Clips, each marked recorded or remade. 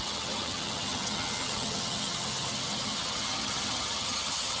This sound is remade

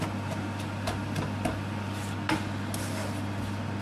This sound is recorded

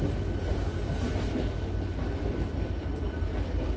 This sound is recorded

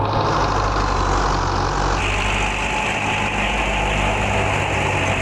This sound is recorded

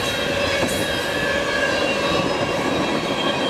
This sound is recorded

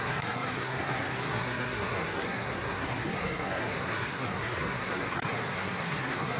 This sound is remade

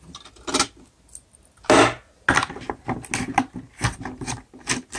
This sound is recorded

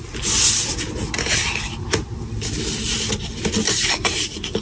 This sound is recorded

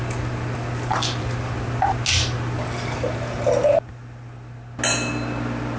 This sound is recorded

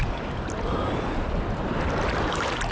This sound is recorded